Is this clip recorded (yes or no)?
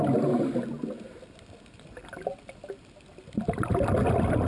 yes